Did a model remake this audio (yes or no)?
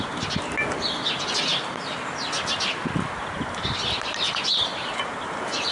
no